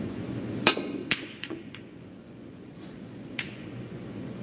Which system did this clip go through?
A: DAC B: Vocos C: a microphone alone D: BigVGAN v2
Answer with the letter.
B